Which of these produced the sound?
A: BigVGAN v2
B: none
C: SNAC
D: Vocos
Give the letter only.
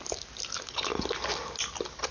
B